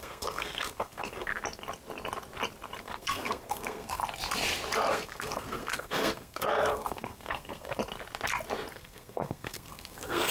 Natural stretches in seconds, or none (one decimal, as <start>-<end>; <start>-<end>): 1.3-2.8; 4.0-4.9; 7.8-8.7